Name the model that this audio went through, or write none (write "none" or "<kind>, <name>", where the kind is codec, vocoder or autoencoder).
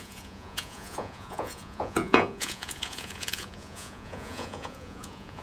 vocoder, Vocos